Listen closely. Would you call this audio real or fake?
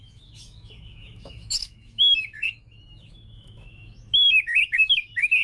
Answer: fake